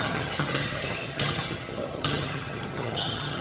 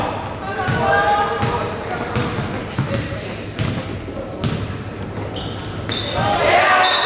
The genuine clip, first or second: second